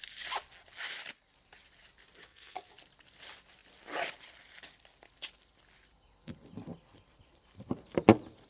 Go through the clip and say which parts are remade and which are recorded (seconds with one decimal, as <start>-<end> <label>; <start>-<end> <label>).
0.0-2.2 recorded; 2.2-2.7 remade; 2.7-8.5 recorded